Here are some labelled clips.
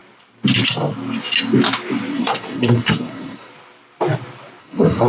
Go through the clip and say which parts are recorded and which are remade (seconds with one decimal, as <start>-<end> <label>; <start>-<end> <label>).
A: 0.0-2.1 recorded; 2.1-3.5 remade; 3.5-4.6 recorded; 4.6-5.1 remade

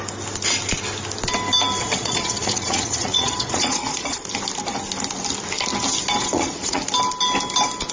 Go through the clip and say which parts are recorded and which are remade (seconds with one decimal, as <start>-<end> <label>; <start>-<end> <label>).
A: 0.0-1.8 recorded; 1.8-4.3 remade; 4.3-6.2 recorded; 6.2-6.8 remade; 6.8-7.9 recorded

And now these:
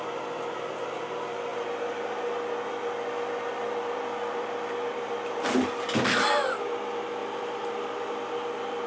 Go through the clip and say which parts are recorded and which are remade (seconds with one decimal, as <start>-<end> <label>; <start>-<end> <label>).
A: 0.0-7.2 recorded; 7.2-7.7 remade; 7.7-8.9 recorded